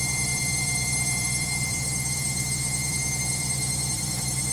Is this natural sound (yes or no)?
no